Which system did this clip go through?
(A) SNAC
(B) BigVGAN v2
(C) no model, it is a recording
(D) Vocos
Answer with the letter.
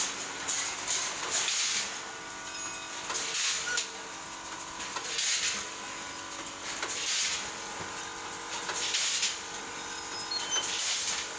C